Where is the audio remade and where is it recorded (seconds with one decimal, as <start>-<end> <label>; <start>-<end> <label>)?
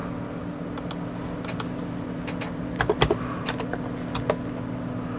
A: 0.0-5.2 recorded